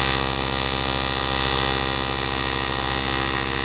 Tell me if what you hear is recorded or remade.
recorded